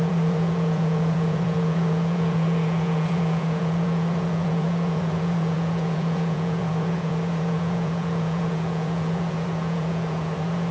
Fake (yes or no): yes